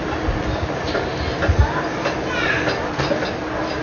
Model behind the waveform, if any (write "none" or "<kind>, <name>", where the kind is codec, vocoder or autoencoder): none